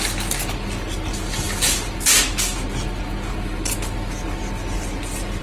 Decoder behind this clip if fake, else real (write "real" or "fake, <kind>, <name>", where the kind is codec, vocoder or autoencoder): real